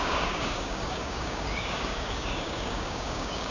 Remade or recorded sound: remade